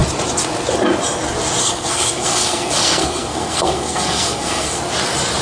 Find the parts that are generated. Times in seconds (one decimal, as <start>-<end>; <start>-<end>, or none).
1.6-4.8

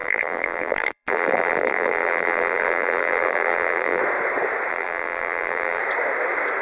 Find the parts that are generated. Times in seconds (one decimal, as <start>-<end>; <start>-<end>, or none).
0.0-4.0; 4.7-5.8